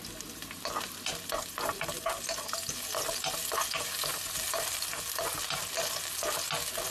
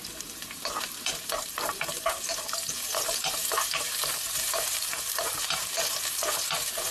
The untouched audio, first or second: first